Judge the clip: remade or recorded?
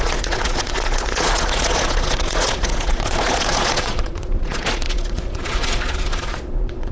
remade